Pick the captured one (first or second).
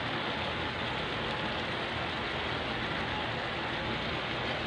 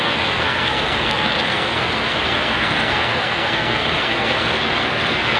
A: first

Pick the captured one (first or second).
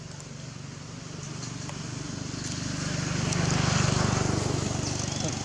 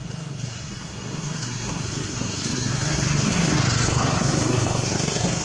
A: first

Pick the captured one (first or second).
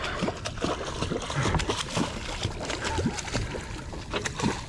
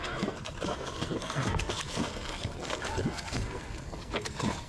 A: first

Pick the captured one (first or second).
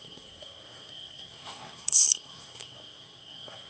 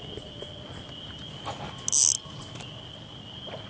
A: second